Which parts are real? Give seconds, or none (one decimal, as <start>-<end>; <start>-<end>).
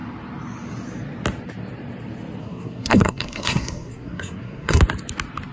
0.0-2.4; 4.8-5.5